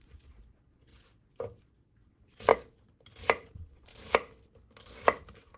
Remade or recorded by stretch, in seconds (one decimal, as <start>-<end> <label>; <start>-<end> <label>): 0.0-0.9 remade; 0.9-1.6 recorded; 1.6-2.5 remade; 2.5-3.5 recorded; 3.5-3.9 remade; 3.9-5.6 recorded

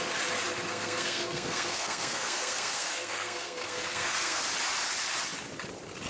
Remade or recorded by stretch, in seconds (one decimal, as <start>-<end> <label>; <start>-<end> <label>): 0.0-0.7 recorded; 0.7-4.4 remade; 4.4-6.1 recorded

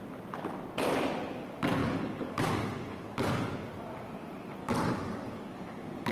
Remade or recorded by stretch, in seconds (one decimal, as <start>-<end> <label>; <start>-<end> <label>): 0.0-1.8 recorded; 1.8-3.5 remade; 3.5-4.6 recorded; 4.6-6.1 remade

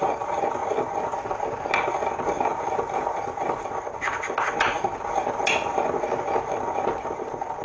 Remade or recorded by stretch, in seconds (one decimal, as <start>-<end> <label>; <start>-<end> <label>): 0.0-7.6 recorded

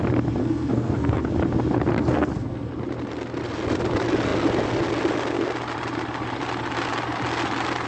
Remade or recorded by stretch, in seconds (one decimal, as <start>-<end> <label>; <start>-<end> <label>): 0.0-0.4 recorded; 0.4-1.3 remade; 1.3-2.0 recorded; 2.0-2.7 remade; 2.7-7.9 recorded